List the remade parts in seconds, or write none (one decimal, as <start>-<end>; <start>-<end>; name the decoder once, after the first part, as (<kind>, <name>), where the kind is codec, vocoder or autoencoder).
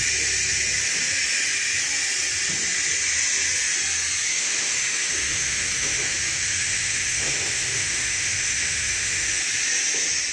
4.3-9.4 (autoencoder, DAC-VAE)